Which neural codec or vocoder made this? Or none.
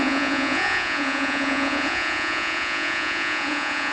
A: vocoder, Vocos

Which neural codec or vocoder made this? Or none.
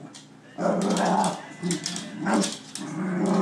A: none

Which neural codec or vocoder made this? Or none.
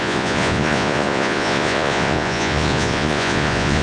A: vocoder, Vocos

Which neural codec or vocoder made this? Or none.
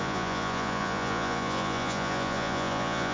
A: vocoder, Vocos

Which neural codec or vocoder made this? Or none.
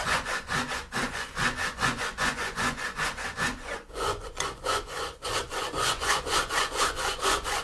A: vocoder, Vocos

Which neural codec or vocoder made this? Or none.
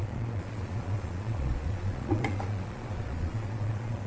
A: vocoder, Vocos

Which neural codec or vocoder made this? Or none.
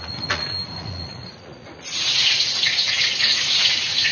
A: vocoder, Vocos